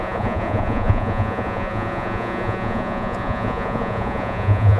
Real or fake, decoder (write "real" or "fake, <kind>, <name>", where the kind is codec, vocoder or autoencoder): fake, vocoder, Vocos